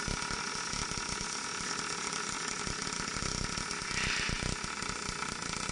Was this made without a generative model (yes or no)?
yes